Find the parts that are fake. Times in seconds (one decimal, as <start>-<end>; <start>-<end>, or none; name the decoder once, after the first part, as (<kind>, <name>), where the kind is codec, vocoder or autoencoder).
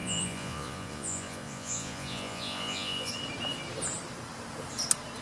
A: 0.0-3.1 (vocoder, Vocos)